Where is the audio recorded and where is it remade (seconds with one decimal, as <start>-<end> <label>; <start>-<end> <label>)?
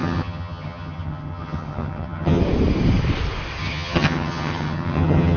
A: 0.0-2.4 remade; 2.4-3.6 recorded; 3.6-5.4 remade